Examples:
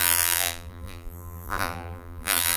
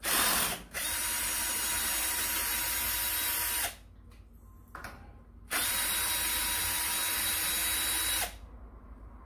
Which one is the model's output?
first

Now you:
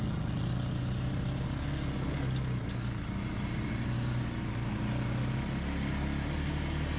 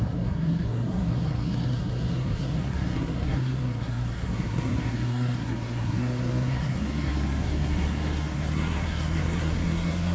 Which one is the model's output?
second